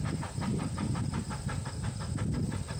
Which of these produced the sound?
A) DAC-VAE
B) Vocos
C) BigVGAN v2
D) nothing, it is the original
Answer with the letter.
C